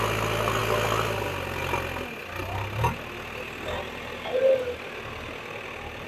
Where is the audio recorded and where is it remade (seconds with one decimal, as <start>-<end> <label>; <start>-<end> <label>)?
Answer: 0.0-6.1 recorded